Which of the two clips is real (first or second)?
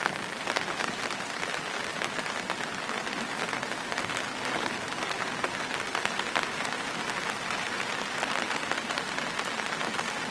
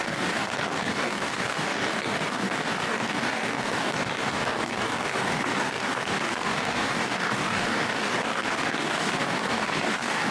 first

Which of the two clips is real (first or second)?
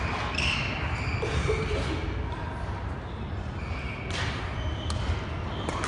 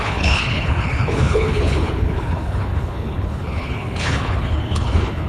first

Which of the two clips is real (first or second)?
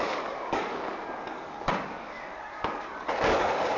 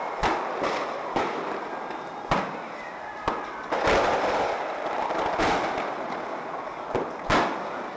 second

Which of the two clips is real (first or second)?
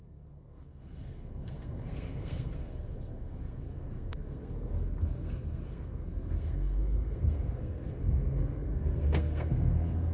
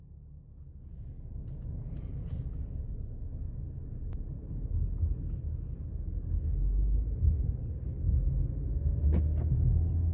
second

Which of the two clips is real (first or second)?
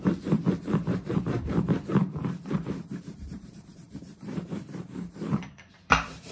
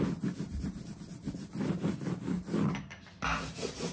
second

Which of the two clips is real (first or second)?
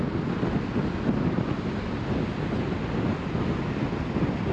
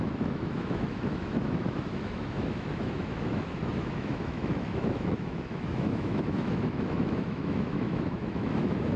first